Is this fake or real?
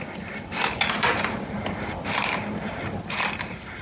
real